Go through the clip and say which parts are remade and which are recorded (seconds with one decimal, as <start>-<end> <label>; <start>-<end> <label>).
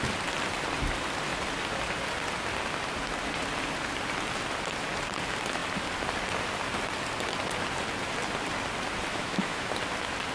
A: 0.0-9.1 recorded; 9.1-9.7 remade; 9.7-10.3 recorded